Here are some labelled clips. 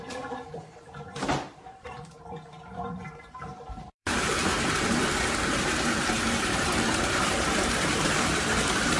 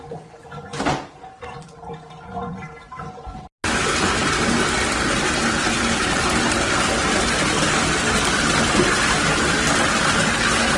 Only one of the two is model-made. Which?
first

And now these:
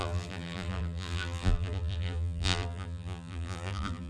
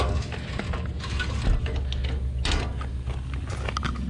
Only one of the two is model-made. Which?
first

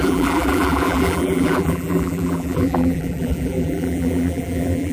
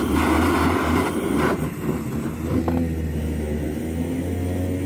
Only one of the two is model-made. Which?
first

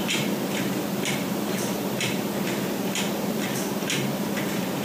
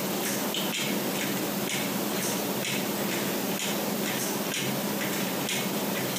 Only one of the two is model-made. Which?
first